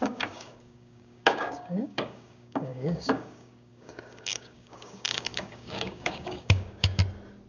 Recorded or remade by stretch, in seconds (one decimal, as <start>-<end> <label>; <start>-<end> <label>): 0.0-7.0 remade; 7.0-7.5 recorded